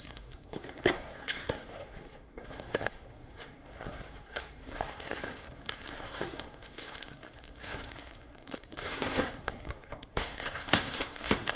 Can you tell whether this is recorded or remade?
remade